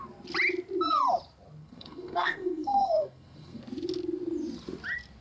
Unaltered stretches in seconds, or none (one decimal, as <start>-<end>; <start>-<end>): 0.0-1.6; 3.6-5.2